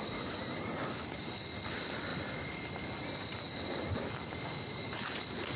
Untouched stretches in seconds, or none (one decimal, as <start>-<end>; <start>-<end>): 0.0-5.6